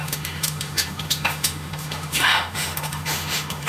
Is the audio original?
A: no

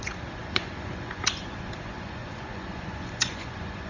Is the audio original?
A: no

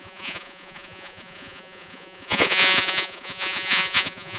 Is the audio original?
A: no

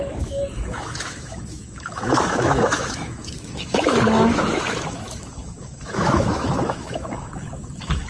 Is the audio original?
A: no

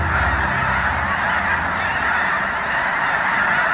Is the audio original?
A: yes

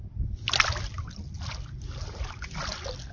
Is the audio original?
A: yes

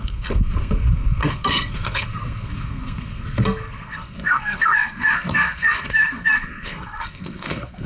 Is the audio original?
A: no